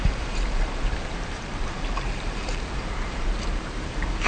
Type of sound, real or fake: fake